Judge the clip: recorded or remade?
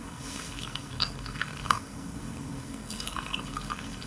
remade